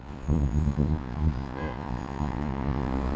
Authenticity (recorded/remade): remade